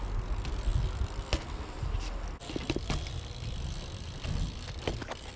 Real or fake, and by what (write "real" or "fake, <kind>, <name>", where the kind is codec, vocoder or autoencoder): real